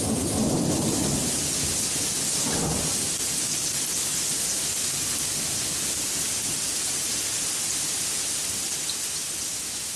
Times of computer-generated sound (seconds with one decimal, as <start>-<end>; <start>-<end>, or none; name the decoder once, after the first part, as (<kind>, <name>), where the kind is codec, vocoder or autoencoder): 9.5-10.0 (autoencoder, DAC-VAE)

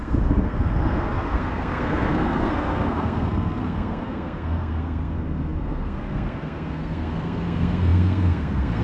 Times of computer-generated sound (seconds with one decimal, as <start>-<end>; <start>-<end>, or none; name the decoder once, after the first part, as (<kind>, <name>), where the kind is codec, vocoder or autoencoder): 0.0-8.8 (codec, SNAC)

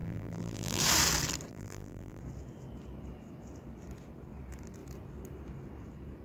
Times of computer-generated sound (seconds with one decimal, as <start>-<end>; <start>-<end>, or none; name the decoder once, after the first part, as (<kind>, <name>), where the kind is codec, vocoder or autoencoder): 0.0-0.8 (vocoder, BigVGAN v2); 1.5-2.2

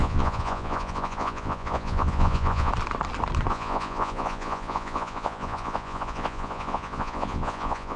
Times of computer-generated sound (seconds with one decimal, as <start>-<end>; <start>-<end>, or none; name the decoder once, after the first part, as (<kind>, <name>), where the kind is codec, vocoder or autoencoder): 0.0-2.7 (vocoder, Vocos); 3.5-8.0

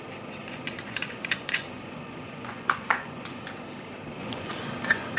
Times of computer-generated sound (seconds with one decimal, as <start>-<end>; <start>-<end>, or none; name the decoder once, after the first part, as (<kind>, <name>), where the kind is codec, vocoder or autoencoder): 0.4-3.5 (vocoder, Vocos); 4.2-5.2

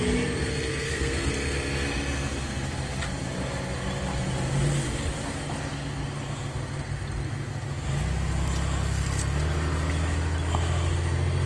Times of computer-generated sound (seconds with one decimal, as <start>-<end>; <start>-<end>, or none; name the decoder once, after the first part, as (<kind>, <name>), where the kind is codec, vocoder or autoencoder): 0.7-1.3 (codec, SNAC)